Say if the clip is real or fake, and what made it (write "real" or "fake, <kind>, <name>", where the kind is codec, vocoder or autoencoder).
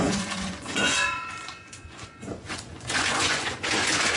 fake, vocoder, Vocos